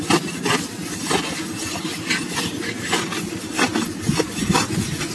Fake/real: real